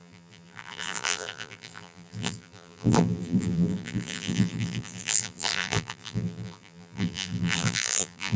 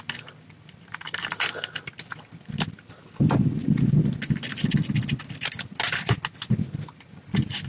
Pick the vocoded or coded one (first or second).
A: first